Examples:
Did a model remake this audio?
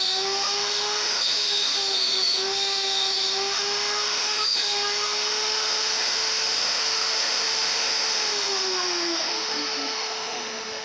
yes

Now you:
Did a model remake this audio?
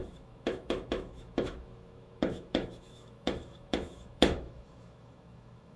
yes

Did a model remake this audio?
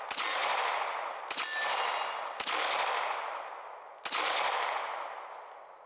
no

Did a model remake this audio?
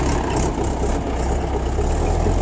no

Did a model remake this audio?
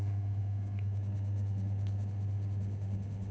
yes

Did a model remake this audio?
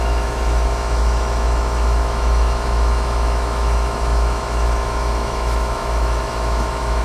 yes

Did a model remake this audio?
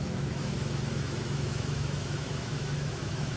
yes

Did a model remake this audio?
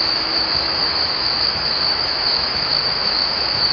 yes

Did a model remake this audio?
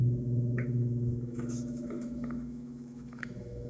yes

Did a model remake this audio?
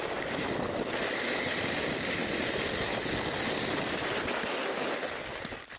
no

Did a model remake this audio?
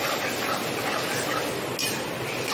no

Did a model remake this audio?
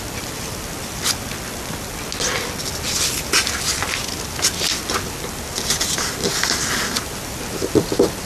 no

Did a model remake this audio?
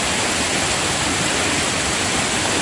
no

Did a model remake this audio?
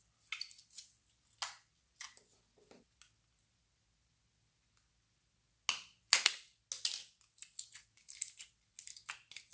no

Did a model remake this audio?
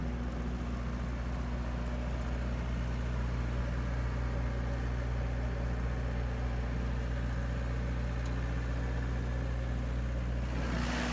no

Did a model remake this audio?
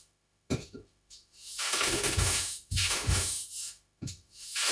yes